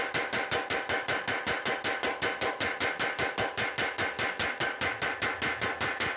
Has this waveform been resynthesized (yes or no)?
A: no